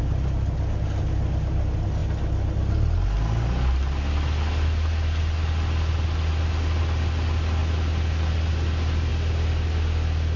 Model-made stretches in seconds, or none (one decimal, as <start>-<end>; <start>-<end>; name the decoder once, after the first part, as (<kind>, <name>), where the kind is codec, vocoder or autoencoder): none